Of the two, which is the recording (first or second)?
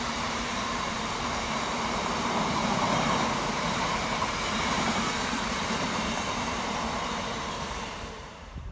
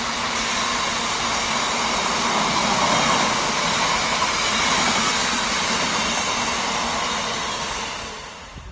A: second